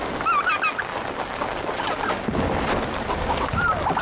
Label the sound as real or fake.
real